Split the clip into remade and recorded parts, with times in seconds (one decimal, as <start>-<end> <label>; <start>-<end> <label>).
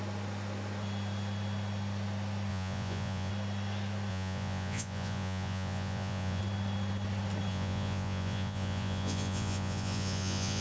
0.0-2.5 recorded; 2.5-3.3 remade; 3.3-4.1 recorded; 4.1-6.4 remade; 6.4-7.5 recorded; 7.5-10.6 remade